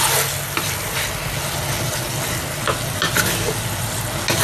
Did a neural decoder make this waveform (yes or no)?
no